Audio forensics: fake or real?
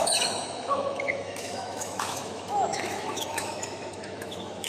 fake